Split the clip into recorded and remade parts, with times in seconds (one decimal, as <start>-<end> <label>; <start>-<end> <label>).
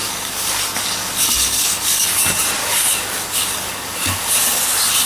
0.0-0.6 remade; 0.6-1.0 recorded; 1.0-2.2 remade; 2.2-2.6 recorded; 2.6-4.6 remade; 4.6-5.1 recorded